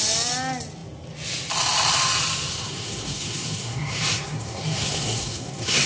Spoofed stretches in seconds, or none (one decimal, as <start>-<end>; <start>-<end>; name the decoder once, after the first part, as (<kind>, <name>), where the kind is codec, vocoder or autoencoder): 2.5-5.9 (codec, SNAC)